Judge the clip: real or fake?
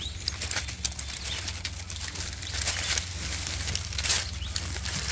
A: real